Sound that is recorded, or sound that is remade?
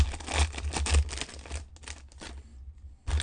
recorded